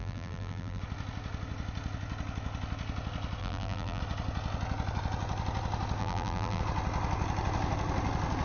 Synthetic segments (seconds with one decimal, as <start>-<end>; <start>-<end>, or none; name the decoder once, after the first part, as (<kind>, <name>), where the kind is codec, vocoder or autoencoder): 0.0-0.8 (vocoder, BigVGAN v2); 3.4-4.0; 6.0-6.6

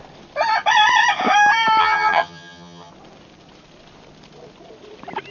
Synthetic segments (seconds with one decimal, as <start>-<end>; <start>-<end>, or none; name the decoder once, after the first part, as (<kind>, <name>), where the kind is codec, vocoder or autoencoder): 1.8-2.9 (vocoder, HiFi-GAN)

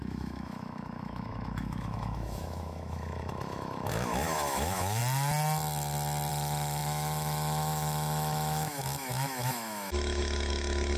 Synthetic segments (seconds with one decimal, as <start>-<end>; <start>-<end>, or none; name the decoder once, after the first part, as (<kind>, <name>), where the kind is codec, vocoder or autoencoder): 0.0-5.0 (autoencoder, DAC-VAE); 6.3-11.0

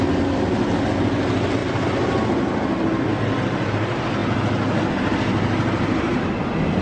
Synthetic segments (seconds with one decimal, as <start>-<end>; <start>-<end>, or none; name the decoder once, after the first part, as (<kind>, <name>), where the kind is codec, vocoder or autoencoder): none

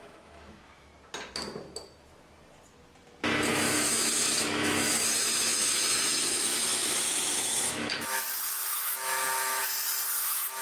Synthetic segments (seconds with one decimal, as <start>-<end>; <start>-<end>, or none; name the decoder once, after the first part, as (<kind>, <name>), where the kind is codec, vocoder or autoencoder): 0.0-0.9 (autoencoder, DAC-VAE); 3.5-9.6; 10.2-10.6

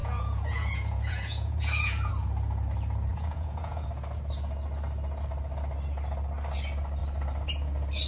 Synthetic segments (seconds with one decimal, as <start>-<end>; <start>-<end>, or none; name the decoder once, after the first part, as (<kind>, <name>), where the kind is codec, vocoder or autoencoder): 0.0-2.1 (vocoder, Vocos); 3.1-3.9